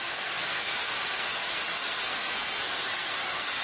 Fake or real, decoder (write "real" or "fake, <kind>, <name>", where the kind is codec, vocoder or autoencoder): fake, codec, SNAC